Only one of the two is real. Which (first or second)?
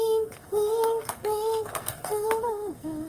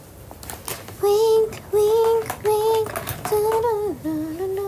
second